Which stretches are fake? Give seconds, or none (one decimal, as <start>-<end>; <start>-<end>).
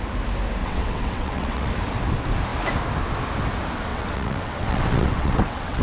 0.6-1.7; 3.9-5.8